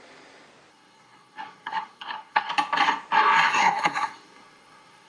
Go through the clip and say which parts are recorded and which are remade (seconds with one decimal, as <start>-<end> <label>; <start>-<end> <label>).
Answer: 0.0-0.7 recorded; 0.7-2.5 remade; 2.5-3.5 recorded; 3.5-5.1 remade

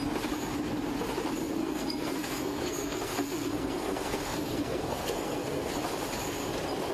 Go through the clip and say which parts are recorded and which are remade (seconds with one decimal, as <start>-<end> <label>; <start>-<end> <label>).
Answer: 0.0-1.6 recorded; 1.6-5.7 remade; 5.7-6.9 recorded